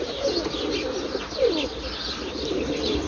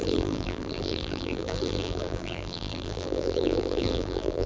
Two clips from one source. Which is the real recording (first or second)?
first